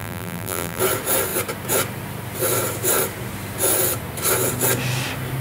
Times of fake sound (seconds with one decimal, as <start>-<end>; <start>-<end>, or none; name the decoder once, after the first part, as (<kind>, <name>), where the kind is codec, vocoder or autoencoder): 0.0-0.8 (vocoder, BigVGAN v2)

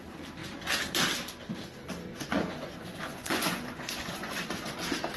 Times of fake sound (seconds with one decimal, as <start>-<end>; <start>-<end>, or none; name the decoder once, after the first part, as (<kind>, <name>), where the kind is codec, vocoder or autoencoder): 2.1-4.7 (vocoder, Vocos)

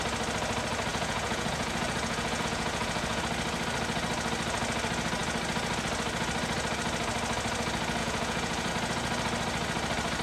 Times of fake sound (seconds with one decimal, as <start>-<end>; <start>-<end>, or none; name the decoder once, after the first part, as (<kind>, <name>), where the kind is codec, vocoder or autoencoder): 0.9-3.2 (vocoder, Vocos); 8.0-8.7

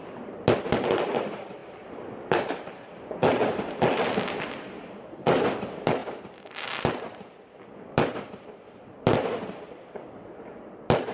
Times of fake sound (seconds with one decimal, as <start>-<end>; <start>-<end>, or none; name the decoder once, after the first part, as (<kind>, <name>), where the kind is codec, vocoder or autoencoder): 0.0-1.6 (vocoder, BigVGAN v2); 2.7-6.0; 7.8-11.1